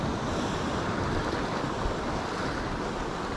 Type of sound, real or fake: real